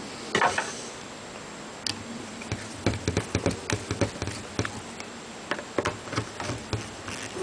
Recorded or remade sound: recorded